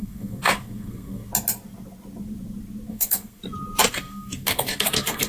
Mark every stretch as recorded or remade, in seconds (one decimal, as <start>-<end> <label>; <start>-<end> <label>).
0.0-1.3 remade; 1.3-2.9 recorded; 2.9-3.4 remade; 3.4-3.9 recorded; 3.9-5.3 remade